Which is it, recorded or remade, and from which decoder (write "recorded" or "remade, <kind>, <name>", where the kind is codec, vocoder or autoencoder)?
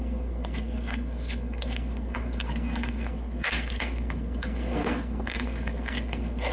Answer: remade, codec, SNAC